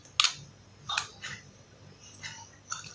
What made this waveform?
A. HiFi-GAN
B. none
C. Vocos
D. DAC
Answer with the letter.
B